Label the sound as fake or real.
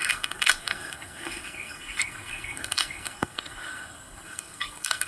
fake